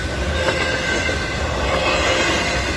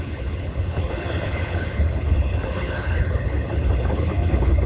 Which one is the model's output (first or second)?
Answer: second